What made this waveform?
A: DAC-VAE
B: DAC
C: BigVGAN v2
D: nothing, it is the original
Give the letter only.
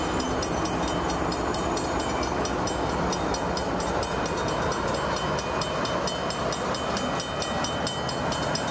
D